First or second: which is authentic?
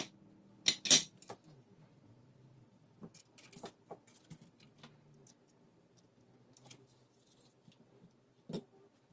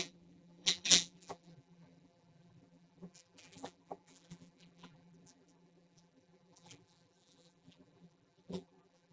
first